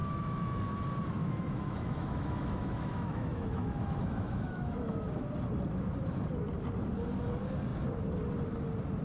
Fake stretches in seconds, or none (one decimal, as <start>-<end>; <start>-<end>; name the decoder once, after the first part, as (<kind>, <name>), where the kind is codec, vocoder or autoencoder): 0.0-0.6 (autoencoder, DAC-VAE); 1.2-5.1